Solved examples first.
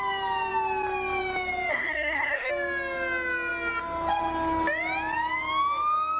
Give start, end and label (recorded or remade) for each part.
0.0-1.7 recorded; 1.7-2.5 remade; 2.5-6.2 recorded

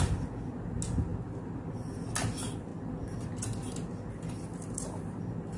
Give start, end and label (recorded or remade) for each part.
0.0-5.6 recorded

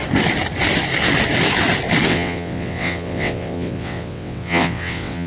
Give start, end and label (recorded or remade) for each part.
0.0-2.1 recorded; 2.1-5.3 remade

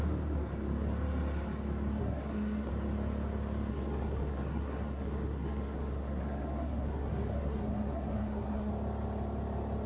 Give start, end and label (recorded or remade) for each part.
0.0-2.0 recorded; 2.0-2.7 remade; 2.7-3.7 recorded; 3.7-8.7 remade; 8.7-9.9 recorded